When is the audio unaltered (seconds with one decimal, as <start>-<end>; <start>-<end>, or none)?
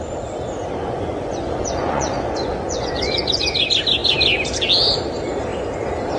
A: 0.0-0.8; 3.4-6.2